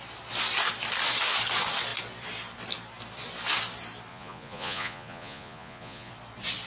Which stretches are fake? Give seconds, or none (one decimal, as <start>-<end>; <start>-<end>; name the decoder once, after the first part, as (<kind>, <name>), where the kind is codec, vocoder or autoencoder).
4.1-6.1 (vocoder, Vocos)